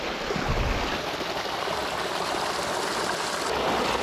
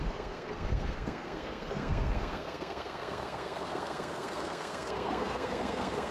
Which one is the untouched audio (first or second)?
first